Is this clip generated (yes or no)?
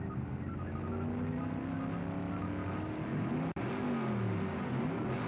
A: no